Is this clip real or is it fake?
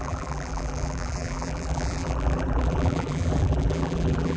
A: fake